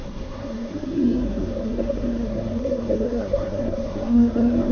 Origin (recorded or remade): remade